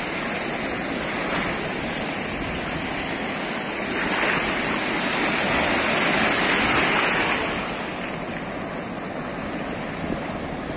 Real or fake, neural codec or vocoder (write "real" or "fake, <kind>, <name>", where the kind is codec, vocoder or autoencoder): real